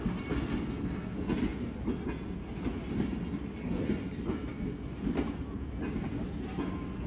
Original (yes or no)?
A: yes